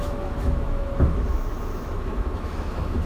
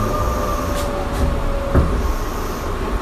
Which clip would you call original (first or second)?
second